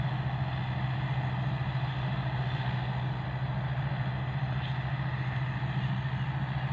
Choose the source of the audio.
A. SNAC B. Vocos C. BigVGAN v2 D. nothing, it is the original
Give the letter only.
D